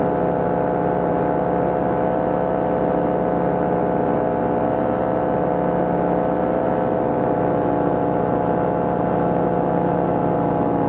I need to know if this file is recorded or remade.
recorded